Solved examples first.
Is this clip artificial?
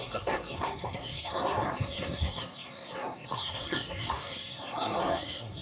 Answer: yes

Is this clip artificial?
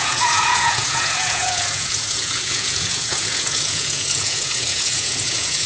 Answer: yes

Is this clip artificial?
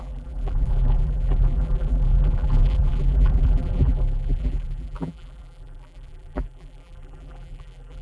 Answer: yes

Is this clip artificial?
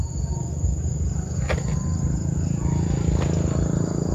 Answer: no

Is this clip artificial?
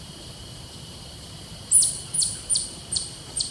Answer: yes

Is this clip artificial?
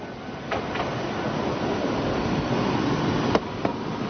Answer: no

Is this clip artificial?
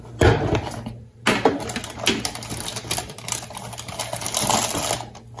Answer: no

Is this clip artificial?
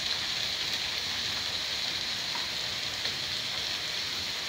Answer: no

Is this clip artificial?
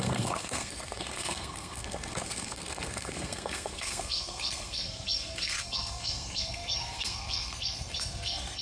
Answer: yes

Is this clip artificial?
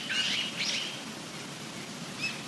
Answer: no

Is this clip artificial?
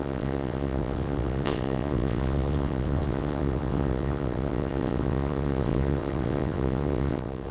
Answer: yes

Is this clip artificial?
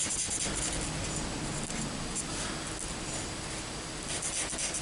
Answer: no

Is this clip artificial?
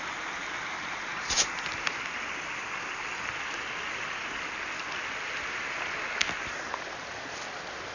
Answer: no